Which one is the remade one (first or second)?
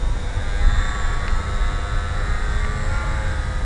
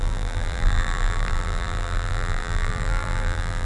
second